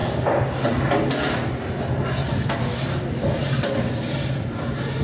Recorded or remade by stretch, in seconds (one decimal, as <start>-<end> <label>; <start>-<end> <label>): 0.0-5.0 recorded